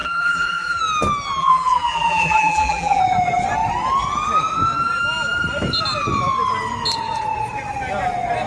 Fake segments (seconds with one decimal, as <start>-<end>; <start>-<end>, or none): 0.0-0.8; 1.4-3.0